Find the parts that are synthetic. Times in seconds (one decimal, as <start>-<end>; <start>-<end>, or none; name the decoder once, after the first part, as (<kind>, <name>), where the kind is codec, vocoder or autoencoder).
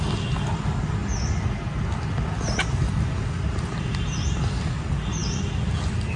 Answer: none